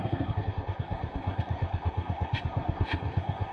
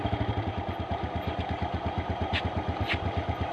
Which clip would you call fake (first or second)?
first